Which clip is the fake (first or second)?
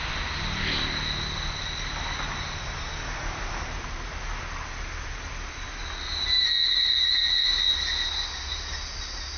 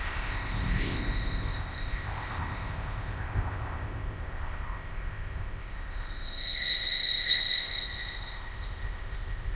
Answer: second